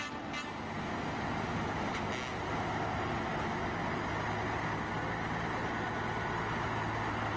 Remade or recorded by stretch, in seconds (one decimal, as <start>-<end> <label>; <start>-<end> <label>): 0.0-1.5 recorded; 1.5-2.0 remade; 2.0-7.4 recorded